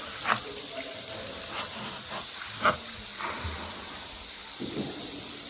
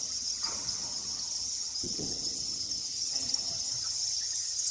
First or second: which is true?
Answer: first